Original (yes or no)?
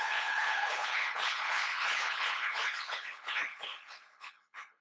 no